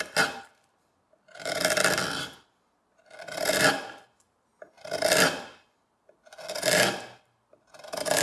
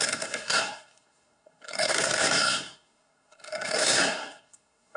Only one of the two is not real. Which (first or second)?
second